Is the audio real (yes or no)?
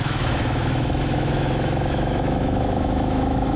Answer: no